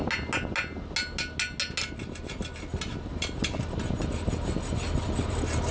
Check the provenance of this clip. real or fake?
real